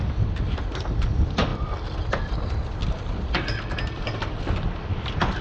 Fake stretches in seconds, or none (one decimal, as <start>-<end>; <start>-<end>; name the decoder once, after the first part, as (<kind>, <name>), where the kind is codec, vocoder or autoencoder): none